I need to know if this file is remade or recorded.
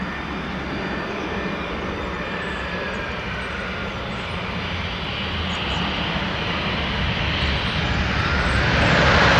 recorded